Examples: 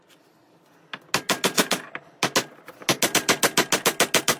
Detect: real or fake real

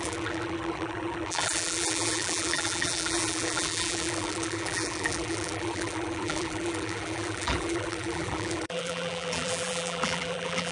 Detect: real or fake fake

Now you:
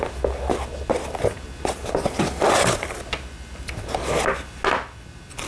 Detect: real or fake real